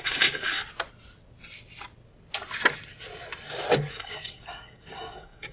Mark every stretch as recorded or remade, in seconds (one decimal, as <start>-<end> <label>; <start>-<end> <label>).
0.0-0.6 remade; 0.6-3.9 recorded; 3.9-5.5 remade